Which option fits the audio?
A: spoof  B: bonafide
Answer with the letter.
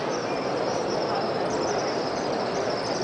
B